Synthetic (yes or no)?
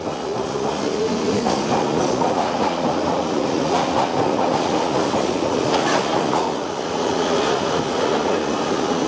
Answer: yes